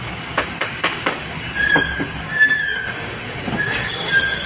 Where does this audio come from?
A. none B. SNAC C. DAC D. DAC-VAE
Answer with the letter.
C